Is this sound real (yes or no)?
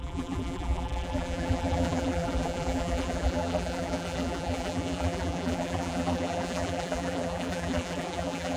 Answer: no